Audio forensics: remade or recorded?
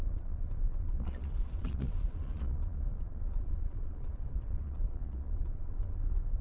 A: remade